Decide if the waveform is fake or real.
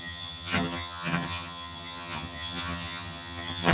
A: fake